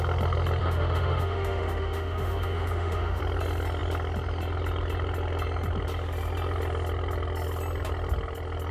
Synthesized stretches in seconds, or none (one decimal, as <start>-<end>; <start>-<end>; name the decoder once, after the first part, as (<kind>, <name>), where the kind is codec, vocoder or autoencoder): 0.6-3.2 (autoencoder, DAC-VAE)